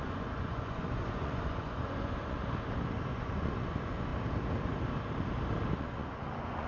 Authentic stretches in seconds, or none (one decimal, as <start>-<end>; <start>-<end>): 2.4-3.1; 4.1-5.8